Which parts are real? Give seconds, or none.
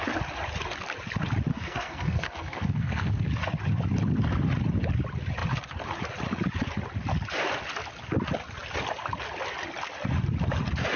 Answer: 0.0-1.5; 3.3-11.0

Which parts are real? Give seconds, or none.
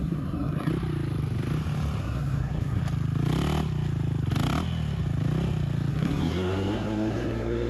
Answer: 0.7-2.0; 2.8-5.9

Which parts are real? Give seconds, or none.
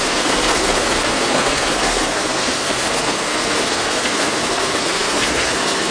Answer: none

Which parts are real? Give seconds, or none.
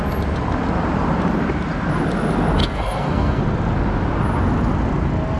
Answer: 0.0-2.6; 3.4-5.4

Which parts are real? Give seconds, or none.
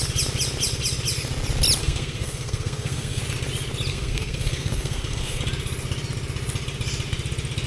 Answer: 0.0-1.8; 3.2-3.9; 5.4-7.7